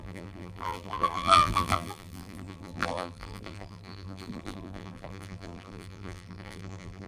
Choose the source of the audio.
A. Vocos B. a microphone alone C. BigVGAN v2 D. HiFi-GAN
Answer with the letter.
C